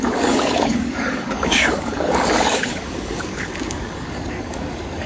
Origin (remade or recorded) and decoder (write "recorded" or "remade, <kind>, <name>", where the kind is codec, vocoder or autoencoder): remade, codec, DAC